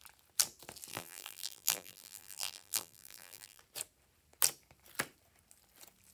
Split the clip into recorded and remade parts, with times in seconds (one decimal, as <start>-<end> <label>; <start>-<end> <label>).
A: 0.0-0.9 recorded; 0.9-3.6 remade; 3.6-6.1 recorded